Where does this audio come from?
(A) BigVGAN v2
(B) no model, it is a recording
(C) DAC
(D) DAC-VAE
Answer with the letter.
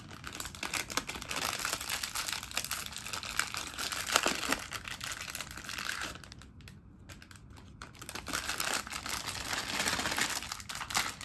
B